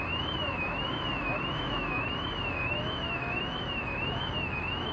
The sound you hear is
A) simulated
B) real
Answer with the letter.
A